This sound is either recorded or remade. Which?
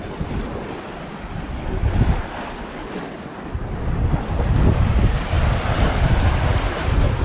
recorded